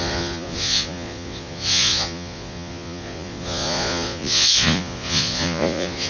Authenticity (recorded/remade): remade